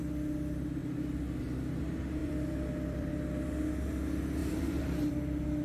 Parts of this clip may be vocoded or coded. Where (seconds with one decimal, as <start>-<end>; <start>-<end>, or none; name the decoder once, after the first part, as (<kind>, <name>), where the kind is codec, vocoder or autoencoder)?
2.2-3.1 (vocoder, BigVGAN v2); 4.4-5.1